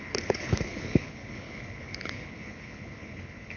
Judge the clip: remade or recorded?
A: remade